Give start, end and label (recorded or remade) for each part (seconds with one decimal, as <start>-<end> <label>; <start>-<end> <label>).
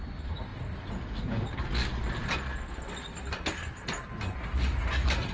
0.0-5.3 recorded